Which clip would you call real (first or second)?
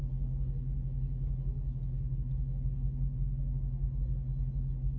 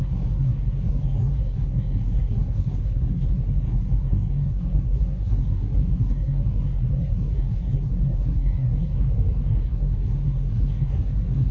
first